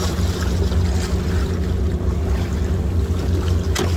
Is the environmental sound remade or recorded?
recorded